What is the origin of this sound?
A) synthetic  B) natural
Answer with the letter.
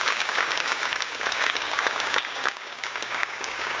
A